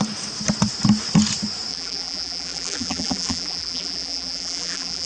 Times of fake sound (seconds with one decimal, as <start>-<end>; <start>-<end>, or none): 1.7-5.1